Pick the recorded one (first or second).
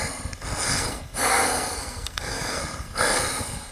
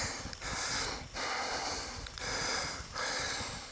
second